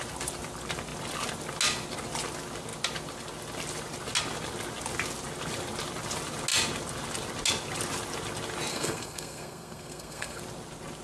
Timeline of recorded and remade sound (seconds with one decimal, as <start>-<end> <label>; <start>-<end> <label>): 0.0-8.7 recorded; 8.7-10.4 remade; 10.4-11.0 recorded